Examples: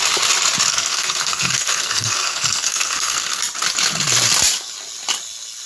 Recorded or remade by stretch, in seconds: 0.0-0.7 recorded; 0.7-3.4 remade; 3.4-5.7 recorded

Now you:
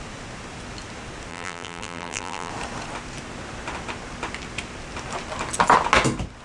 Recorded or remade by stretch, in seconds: 0.0-1.3 recorded; 1.3-2.5 remade; 2.5-6.4 recorded

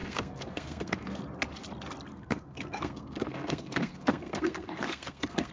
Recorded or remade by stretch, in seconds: 0.0-1.2 remade; 1.2-2.1 recorded; 2.1-5.5 remade

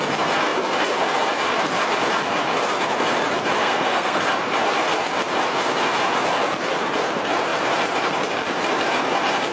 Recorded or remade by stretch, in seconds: 0.0-3.6 recorded; 3.6-4.2 remade; 4.2-9.5 recorded

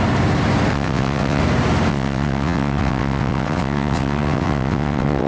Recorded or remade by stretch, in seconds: 0.0-0.7 recorded; 0.7-1.4 remade; 1.4-1.9 recorded; 1.9-5.3 remade

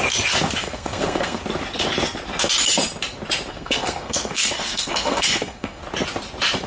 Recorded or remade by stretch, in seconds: 0.0-0.6 recorded; 0.6-1.4 remade; 1.4-3.5 recorded; 3.5-5.8 remade; 5.8-6.7 recorded